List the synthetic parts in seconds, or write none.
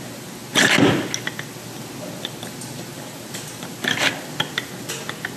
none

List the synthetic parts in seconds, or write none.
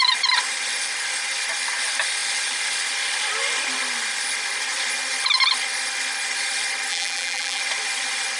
6.9-7.6 (vocoder, BigVGAN v2)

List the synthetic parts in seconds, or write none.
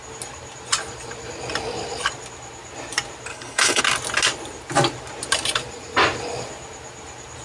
3.3-3.8 (codec, HILCodec)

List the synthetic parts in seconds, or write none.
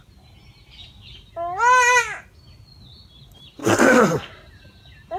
3.6-4.3 (codec, SNAC)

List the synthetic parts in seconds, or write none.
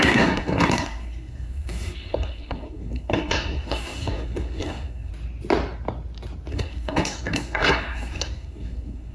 0.0-5.1 (codec, SNAC); 6.5-9.1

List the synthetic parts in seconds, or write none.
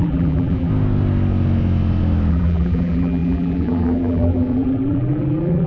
0.0-0.7 (vocoder, BigVGAN v2); 2.3-5.7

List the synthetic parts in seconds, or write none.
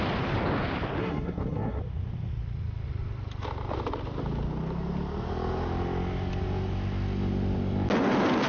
1.0-1.8 (codec, SNAC)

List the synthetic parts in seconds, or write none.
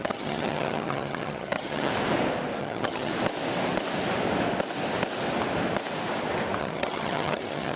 0.0-1.9 (vocoder, HiFi-GAN); 2.6-3.1; 6.6-7.8